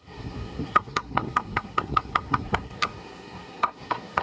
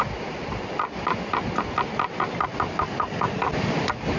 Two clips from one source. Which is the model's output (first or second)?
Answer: first